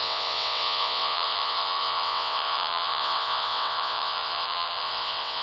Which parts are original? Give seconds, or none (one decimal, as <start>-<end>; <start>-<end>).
none